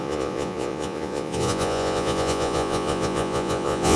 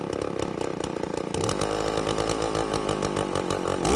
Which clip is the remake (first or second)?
first